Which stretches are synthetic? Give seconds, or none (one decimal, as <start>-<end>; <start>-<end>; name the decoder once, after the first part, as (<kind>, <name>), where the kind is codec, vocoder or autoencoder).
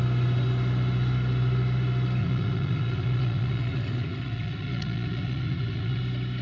2.2-6.0 (vocoder, Vocos)